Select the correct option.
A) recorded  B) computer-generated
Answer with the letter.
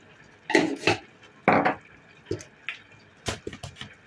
A